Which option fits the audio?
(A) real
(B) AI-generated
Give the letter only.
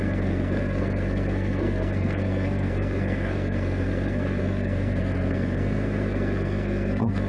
B